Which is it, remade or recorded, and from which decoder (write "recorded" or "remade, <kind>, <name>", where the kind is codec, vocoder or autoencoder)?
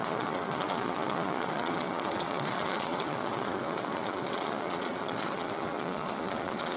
remade, vocoder, Vocos